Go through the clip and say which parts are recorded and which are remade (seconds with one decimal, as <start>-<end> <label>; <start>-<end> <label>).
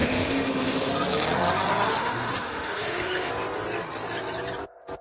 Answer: 0.0-0.9 remade; 0.9-1.9 recorded; 1.9-3.3 remade; 3.3-5.0 recorded